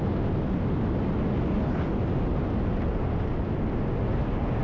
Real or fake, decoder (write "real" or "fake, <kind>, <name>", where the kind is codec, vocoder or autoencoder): real